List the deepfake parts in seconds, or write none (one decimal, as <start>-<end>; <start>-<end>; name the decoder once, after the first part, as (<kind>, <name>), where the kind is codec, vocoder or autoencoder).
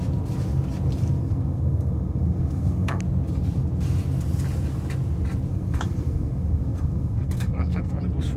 1.2-3.0 (codec, SNAC); 5.5-8.0